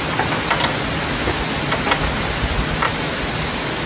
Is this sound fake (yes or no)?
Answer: no